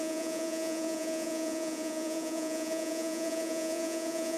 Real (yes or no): no